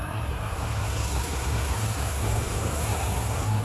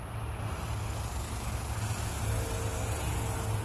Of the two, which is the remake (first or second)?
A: first